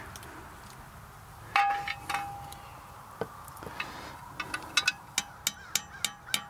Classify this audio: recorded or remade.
recorded